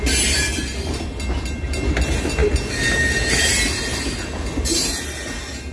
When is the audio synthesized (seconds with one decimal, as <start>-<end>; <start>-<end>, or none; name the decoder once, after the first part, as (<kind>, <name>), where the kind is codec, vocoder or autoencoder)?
none